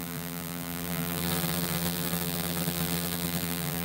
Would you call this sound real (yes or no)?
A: no